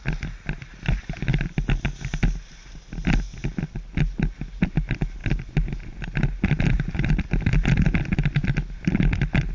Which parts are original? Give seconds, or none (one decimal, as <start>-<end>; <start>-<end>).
0.0-9.5